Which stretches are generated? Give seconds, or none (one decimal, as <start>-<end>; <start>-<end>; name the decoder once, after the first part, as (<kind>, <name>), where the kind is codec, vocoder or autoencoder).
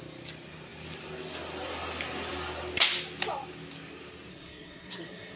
4.3-5.4 (codec, SNAC)